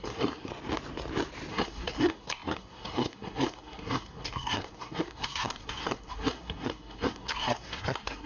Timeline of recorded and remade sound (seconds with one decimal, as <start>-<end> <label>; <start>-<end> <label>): 0.0-0.5 remade; 0.5-1.5 recorded; 1.5-8.3 remade